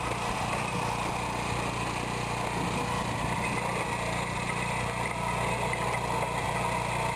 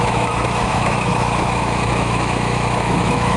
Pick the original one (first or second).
first